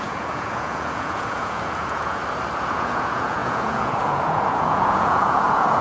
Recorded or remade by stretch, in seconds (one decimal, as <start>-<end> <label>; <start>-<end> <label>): 0.0-2.2 remade; 2.2-2.7 recorded; 2.7-5.8 remade